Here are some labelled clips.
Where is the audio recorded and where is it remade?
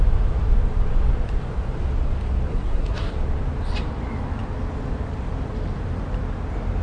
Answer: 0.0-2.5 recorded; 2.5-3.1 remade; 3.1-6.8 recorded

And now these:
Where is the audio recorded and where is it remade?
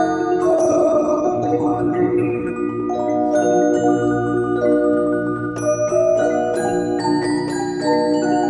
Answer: 0.0-0.5 recorded; 0.5-2.5 remade; 2.5-8.5 recorded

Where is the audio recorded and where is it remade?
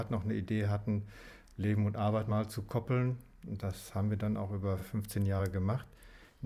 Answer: 0.0-6.5 recorded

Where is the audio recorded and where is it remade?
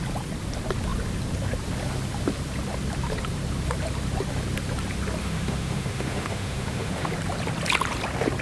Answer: 0.0-5.2 recorded; 5.2-7.1 remade; 7.1-8.4 recorded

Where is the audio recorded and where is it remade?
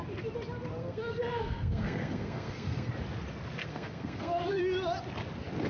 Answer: 0.0-0.8 recorded; 0.8-2.9 remade; 2.9-3.6 recorded; 3.6-4.6 remade; 4.6-5.7 recorded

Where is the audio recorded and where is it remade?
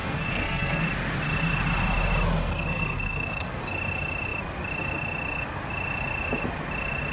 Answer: 0.0-0.8 remade; 0.8-2.4 recorded; 2.4-3.6 remade; 3.6-7.1 recorded